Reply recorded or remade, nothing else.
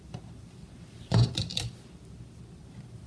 remade